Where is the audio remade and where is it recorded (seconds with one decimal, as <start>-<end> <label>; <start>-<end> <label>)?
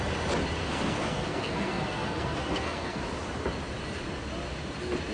0.0-0.6 recorded; 0.6-3.0 remade; 3.0-5.1 recorded